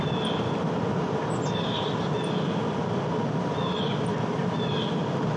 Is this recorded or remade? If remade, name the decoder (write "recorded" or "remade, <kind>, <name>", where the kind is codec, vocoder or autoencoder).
recorded